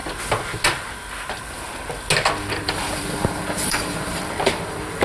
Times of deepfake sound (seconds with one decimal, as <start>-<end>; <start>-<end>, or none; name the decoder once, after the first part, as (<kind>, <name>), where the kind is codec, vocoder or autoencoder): 2.5-5.0 (vocoder, BigVGAN v2)